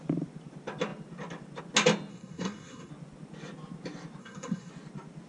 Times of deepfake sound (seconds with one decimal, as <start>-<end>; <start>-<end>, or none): 2.1-2.9; 4.2-4.7

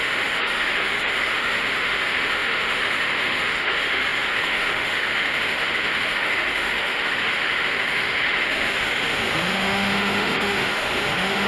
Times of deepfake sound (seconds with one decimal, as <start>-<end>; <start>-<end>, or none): 0.0-11.5

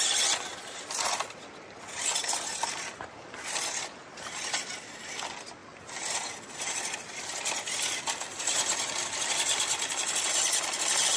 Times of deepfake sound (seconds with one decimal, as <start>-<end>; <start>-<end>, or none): none